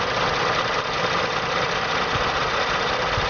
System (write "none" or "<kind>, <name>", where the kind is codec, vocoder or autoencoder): none